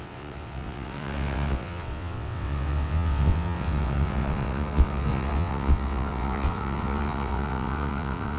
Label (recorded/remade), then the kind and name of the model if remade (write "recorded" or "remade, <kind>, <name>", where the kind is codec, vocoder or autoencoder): remade, vocoder, WaveNeXt